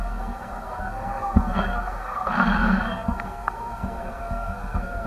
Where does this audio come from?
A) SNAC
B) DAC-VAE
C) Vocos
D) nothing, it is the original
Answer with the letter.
A